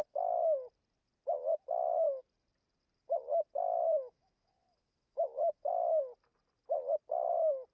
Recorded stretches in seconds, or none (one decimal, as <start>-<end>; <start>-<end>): 0.0-3.7; 5.7-7.7